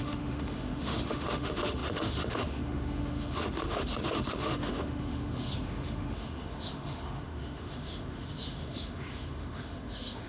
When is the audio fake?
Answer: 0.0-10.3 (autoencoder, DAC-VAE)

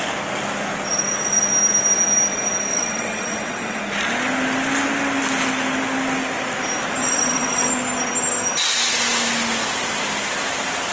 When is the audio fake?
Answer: 2.7-3.8 (vocoder, WaveNeXt); 7.0-7.7

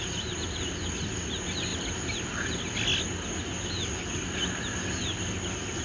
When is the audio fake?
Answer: none

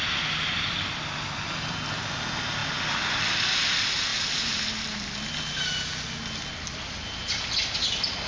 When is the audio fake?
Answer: none